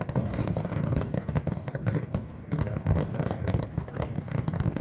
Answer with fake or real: fake